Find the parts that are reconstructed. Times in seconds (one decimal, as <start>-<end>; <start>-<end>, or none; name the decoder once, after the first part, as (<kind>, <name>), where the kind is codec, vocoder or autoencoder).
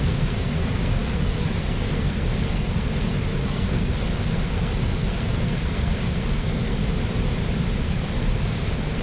0.0-6.8 (codec, SNAC); 7.8-9.0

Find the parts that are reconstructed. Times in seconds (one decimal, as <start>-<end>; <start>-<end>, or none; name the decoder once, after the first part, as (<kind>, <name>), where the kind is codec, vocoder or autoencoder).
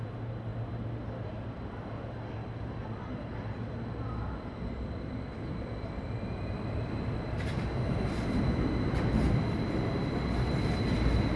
none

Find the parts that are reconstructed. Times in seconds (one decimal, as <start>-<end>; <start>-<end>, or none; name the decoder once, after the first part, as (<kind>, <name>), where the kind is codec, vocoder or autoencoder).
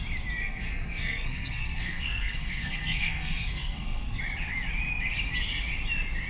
0.4-4.2 (codec, SNAC)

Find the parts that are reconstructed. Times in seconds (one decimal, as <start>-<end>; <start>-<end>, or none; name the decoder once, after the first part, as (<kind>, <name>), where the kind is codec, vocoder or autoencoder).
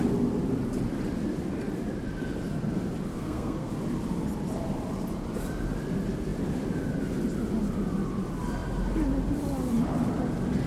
3.1-3.7 (codec, SNAC)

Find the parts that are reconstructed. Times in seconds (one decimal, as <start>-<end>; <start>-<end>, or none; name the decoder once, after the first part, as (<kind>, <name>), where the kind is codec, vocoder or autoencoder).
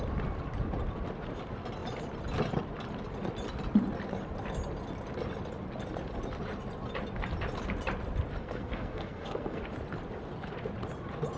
8.4-9.6 (codec, SNAC)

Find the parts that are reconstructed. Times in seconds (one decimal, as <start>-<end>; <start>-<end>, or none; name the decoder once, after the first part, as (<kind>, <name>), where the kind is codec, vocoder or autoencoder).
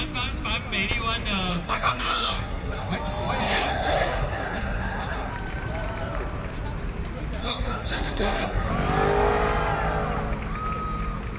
1.5-2.9 (codec, SNAC); 3.4-5.3; 7.4-8.7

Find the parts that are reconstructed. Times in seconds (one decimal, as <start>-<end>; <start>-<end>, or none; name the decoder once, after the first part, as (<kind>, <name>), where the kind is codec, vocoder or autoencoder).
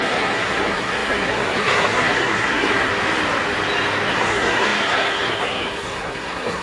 0.0-2.9 (codec, SNAC); 4.1-6.6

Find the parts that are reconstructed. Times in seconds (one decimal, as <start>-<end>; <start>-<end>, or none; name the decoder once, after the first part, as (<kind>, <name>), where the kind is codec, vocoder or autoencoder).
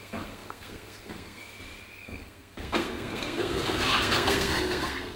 0.0-1.4 (codec, SNAC); 2.0-5.2